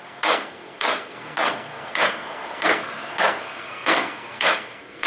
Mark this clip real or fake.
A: fake